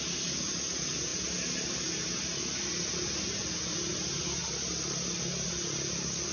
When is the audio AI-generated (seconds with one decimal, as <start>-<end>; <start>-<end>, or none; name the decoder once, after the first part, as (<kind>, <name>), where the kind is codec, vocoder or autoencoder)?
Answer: none